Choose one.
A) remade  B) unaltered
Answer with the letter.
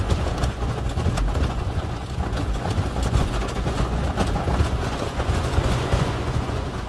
A